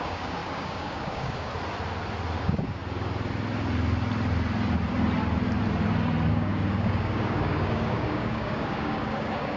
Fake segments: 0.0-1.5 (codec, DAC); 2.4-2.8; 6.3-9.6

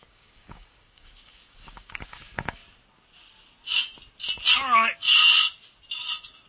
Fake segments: 0.0-2.6 (codec, DAC)

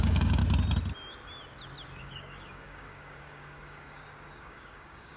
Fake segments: 0.0-0.4 (codec, DAC); 2.0-5.2

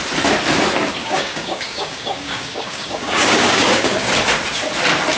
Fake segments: 1.0-4.1 (codec, DAC)

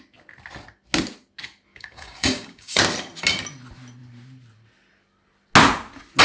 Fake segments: 1.7-2.8 (codec, DAC)

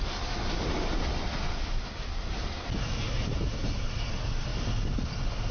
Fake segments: none

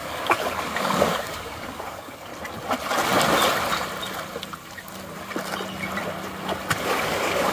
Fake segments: 0.0-2.3 (codec, DAC); 6.8-7.5